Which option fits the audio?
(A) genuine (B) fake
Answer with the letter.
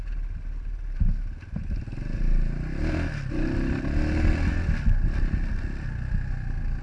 A